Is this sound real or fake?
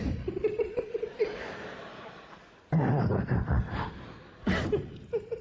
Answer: fake